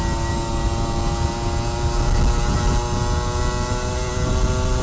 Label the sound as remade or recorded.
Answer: recorded